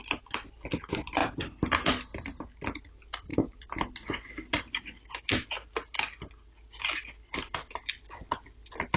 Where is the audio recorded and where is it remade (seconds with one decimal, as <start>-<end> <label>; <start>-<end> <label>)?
0.0-9.0 recorded